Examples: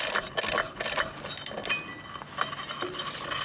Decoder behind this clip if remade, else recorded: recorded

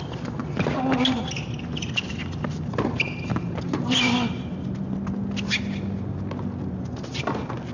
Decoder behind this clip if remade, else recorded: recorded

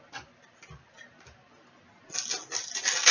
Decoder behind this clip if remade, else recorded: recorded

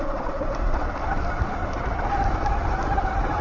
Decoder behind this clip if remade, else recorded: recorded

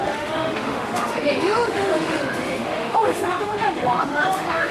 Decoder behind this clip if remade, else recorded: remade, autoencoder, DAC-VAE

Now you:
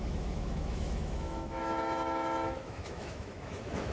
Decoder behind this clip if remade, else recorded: remade, autoencoder, DAC-VAE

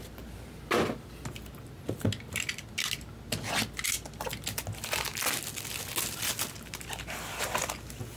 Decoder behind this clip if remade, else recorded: recorded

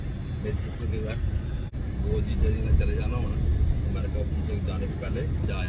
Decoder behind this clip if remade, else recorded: recorded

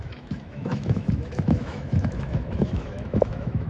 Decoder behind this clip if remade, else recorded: remade, autoencoder, DAC-VAE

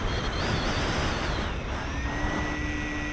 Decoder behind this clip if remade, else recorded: recorded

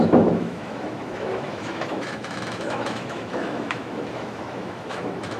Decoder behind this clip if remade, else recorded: remade, autoencoder, DAC-VAE